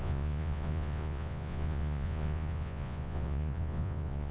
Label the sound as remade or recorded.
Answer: remade